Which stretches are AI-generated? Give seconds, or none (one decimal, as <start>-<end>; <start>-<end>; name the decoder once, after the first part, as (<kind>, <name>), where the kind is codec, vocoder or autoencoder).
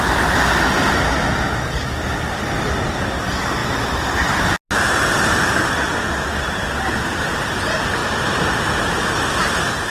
none